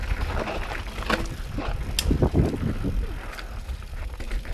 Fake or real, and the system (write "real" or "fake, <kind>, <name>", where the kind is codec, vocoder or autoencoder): real